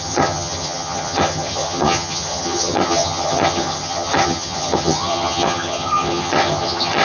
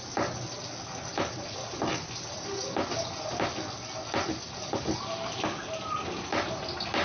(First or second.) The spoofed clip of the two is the first